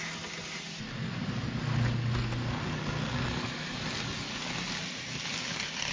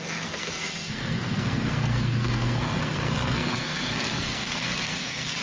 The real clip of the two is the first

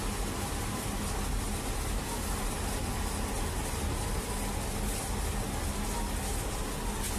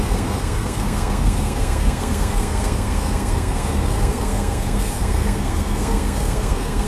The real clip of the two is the first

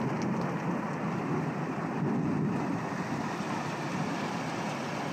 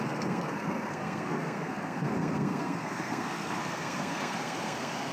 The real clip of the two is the first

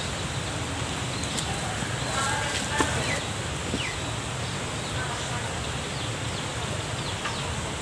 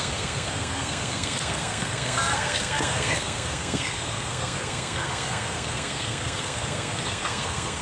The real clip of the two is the first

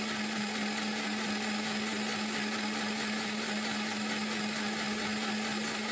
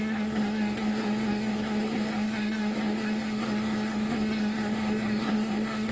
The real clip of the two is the first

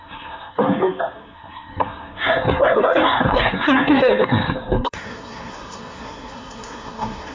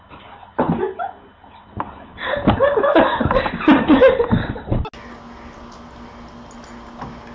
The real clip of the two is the second